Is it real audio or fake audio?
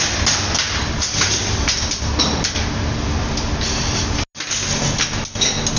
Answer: real